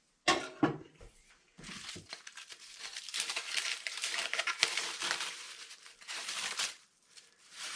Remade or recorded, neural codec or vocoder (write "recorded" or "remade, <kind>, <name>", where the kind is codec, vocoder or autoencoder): remade, vocoder, BigVGAN v2